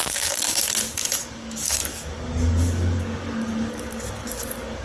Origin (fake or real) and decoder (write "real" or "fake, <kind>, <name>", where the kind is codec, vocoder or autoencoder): fake, codec, DAC